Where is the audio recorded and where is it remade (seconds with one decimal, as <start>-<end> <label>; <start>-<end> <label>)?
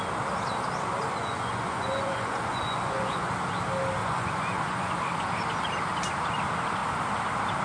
0.0-1.2 recorded; 1.2-3.3 remade; 3.3-4.0 recorded; 4.0-4.9 remade; 4.9-7.6 recorded